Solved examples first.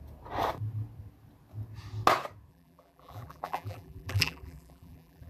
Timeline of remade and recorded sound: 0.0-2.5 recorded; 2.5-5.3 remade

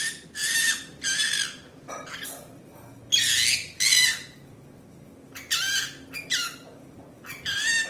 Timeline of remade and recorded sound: 0.0-0.4 recorded; 0.4-2.1 remade; 2.1-7.9 recorded

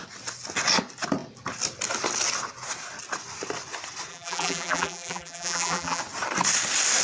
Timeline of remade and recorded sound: 0.0-4.1 recorded; 4.1-6.0 remade; 6.0-7.0 recorded

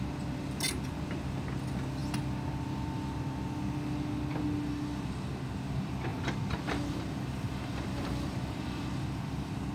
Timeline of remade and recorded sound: 0.0-6.1 recorded; 6.1-9.7 remade

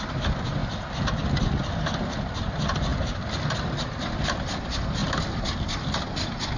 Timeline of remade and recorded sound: 0.0-0.6 recorded; 0.6-1.4 remade; 1.4-6.6 recorded

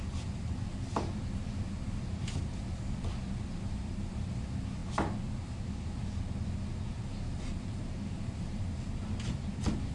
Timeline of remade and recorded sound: 0.0-9.9 recorded

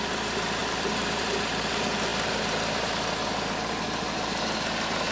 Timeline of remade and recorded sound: 0.0-0.6 recorded; 0.6-1.5 remade; 1.5-5.1 recorded

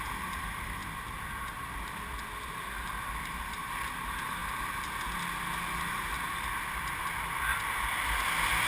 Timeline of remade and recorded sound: 0.0-0.8 remade; 0.8-3.3 recorded; 3.3-4.4 remade; 4.4-8.7 recorded